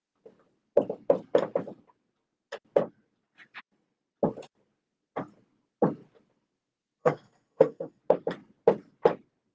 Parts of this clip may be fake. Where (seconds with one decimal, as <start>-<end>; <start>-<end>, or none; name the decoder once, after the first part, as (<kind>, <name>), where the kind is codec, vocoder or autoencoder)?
7.0-8.0 (codec, SNAC)